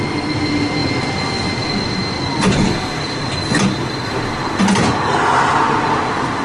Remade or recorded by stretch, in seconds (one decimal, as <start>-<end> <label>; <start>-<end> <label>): 0.0-6.4 recorded